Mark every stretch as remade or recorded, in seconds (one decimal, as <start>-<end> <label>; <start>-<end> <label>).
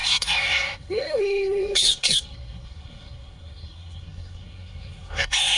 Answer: 0.0-5.6 remade